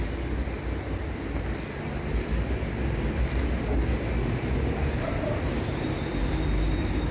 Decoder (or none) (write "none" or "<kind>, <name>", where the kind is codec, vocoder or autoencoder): none